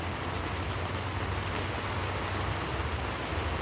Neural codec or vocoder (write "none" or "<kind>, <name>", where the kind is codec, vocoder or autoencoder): none